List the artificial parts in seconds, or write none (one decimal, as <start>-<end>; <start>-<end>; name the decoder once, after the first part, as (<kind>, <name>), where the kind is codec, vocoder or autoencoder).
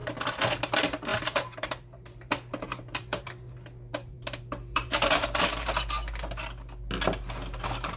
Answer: 1.1-5.7 (vocoder, BigVGAN v2)